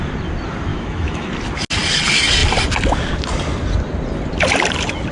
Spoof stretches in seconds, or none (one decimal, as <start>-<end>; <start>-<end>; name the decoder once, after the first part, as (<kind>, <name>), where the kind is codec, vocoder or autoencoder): 0.7-1.3 (autoencoder, DAC-VAE)